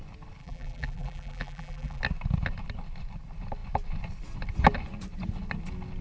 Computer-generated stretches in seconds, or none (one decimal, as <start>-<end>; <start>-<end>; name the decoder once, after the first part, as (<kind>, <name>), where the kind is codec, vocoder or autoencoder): 0.4-2.0 (vocoder, BigVGAN v2)